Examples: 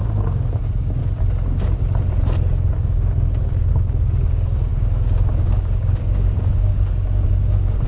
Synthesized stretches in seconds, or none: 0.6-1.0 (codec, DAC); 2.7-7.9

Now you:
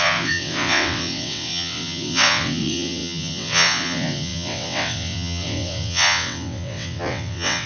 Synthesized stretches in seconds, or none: 0.0-7.7 (vocoder, WaveNeXt)

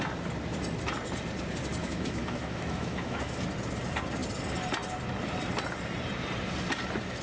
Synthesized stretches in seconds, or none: 1.8-3.4 (autoencoder, DAC-VAE)

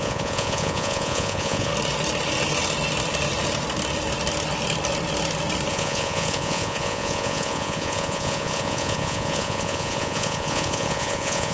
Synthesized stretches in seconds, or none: 0.0-1.7 (vocoder, Vocos); 5.7-11.5

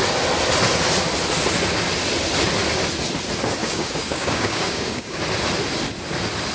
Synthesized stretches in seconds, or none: 3.6-5.2 (codec, DAC)